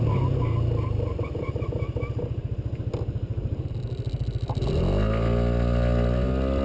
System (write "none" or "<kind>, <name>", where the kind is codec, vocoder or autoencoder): none